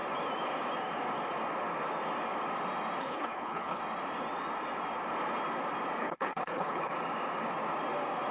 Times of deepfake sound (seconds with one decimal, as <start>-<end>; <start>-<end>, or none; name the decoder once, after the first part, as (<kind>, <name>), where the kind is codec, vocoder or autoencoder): 3.0-3.8 (codec, HILCodec); 6.0-6.9